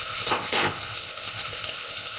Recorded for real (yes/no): no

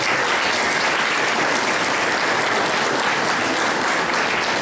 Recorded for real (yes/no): yes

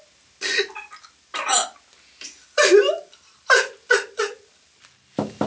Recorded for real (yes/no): yes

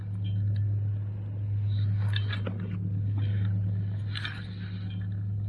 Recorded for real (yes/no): yes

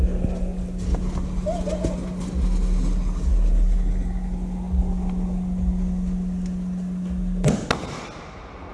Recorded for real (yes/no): yes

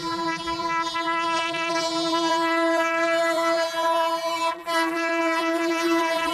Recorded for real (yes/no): no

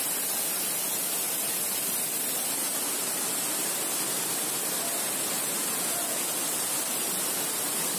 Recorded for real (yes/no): yes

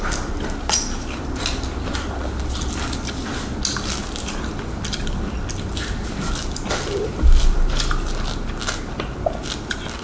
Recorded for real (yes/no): yes